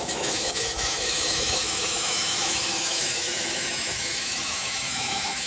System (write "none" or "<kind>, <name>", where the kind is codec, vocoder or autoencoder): autoencoder, DAC-VAE